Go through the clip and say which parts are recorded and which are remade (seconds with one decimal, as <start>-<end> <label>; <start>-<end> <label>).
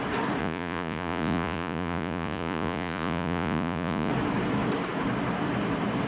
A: 0.0-0.4 recorded; 0.4-4.1 remade; 4.1-6.1 recorded